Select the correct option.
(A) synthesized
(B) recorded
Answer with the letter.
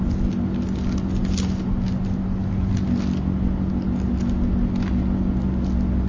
B